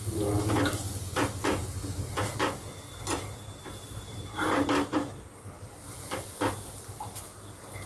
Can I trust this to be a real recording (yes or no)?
yes